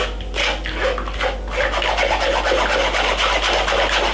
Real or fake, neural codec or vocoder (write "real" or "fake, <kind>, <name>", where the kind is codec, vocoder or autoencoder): real